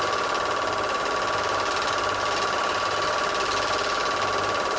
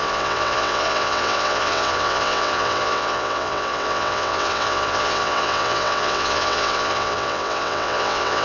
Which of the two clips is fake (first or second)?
second